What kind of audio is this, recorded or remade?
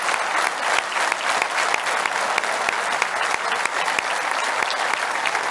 recorded